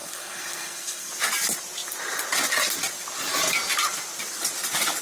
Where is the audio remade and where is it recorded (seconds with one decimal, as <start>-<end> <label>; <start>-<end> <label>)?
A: 0.0-1.1 remade; 1.1-5.0 recorded